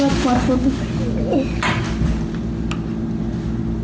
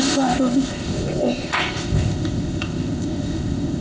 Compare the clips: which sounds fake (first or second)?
second